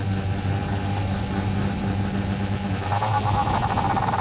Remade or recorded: recorded